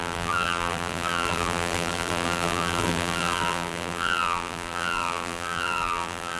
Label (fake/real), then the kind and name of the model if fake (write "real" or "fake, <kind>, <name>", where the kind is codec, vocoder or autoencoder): fake, vocoder, BigVGAN v2